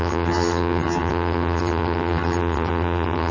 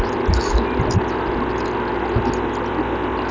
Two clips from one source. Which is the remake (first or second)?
first